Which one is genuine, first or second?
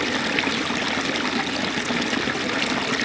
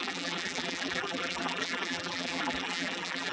first